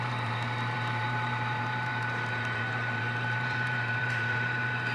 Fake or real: fake